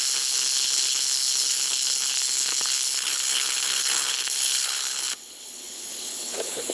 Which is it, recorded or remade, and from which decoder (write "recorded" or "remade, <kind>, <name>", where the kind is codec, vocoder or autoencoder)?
remade, codec, HILCodec